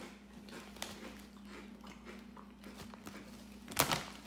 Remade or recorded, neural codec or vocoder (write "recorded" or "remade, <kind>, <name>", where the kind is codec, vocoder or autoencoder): recorded